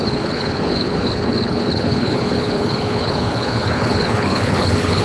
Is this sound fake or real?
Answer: fake